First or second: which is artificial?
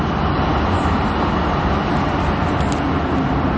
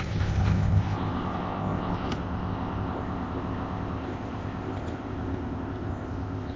second